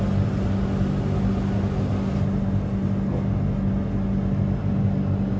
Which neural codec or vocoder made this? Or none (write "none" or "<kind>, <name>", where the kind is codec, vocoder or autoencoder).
none